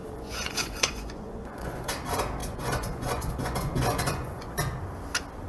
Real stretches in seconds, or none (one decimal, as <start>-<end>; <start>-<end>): 1.9-2.4; 4.8-5.5